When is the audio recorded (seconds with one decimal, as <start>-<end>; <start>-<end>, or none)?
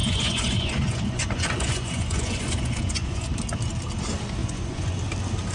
3.3-4.4; 5.0-5.5